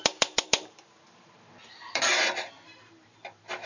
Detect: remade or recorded remade